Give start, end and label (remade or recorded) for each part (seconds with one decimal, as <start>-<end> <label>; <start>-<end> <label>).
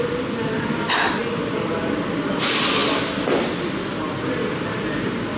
0.0-5.4 recorded